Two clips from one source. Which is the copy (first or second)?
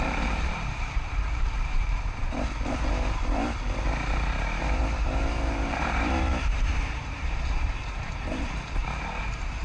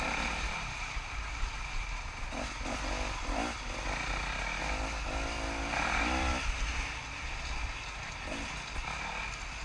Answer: first